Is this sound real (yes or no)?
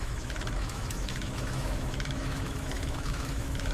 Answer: no